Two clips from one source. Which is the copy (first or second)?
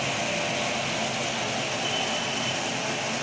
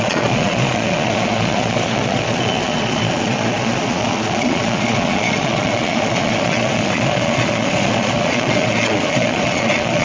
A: second